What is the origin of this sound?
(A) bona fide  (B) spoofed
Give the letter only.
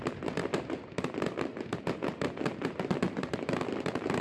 B